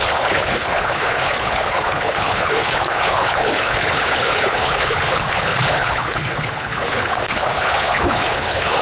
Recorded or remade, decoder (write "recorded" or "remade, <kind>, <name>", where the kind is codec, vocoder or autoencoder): remade, codec, HILCodec